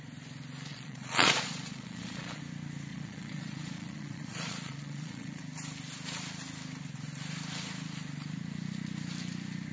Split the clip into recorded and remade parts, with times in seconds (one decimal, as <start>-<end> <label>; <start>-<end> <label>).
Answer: 0.0-0.7 recorded; 0.7-2.4 remade; 2.4-2.9 recorded; 2.9-5.4 remade; 5.4-9.7 recorded